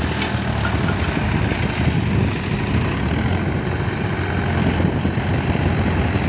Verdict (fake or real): real